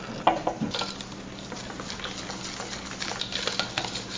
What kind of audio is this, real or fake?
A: real